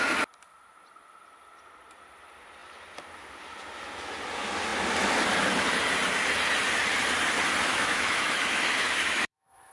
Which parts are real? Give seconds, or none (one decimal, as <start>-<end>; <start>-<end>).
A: 0.0-7.7